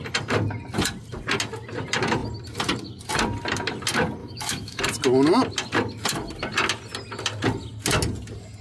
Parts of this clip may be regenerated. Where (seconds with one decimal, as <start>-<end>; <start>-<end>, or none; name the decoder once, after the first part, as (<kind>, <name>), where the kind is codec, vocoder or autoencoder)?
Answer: 4.2-4.8 (autoencoder, DAC-VAE)